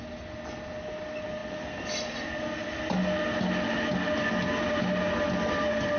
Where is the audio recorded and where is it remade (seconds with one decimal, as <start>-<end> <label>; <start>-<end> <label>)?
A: 0.0-6.0 recorded